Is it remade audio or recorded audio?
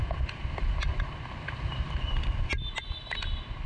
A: recorded